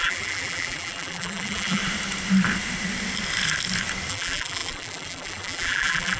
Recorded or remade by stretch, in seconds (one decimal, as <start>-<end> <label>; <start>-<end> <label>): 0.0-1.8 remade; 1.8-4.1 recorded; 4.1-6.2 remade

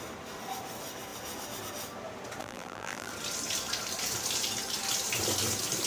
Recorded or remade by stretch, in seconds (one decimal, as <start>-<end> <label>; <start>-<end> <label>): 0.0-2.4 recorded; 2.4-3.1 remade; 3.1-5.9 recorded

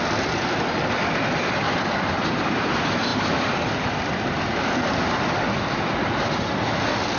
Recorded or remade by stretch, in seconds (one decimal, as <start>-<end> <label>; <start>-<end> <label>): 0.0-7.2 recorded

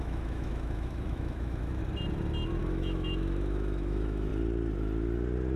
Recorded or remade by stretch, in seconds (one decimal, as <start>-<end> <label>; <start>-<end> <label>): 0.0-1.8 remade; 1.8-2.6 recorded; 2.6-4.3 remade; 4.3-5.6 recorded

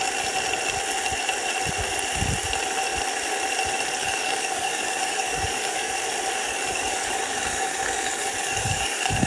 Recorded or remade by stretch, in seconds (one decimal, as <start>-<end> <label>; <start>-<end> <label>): 0.0-4.0 recorded; 4.0-5.9 remade; 5.9-6.4 recorded; 6.4-9.3 remade

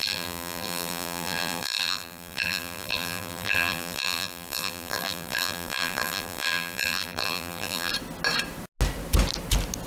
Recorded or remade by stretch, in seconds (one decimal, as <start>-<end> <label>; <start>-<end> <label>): 0.0-7.9 remade; 7.9-9.9 recorded

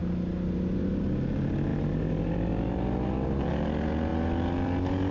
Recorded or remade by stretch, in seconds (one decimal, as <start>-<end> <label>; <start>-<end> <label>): 0.0-1.7 recorded; 1.7-3.5 remade; 3.5-4.1 recorded; 4.1-5.1 remade